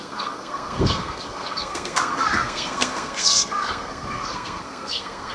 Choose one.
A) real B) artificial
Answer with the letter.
B